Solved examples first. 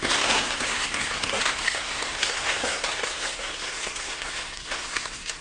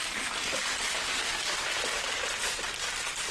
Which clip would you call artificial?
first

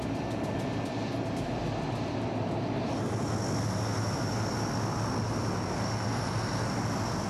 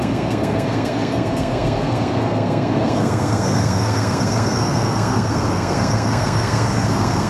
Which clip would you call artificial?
second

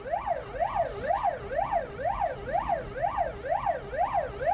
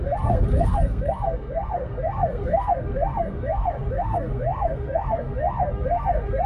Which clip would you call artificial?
second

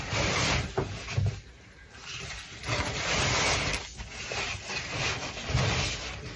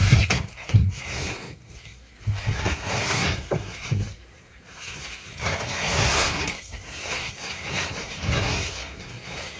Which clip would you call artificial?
second